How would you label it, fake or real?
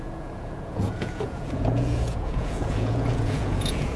fake